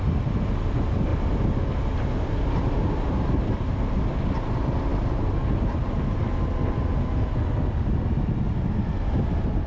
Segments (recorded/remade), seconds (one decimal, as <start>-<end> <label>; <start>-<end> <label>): 0.0-9.7 recorded